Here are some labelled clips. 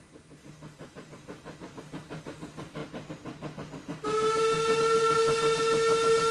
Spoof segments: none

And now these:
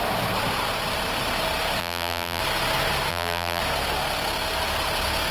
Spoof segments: 1.8-2.4 (vocoder, BigVGAN v2); 3.1-3.6

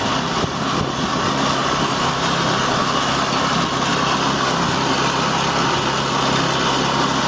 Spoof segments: 1.6-3.1 (vocoder, BigVGAN v2)

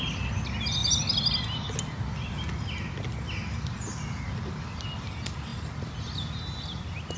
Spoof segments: none

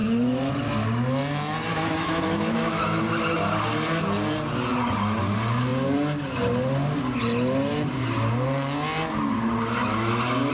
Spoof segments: 0.0-0.5 (autoencoder, DAC-VAE); 1.7-3.0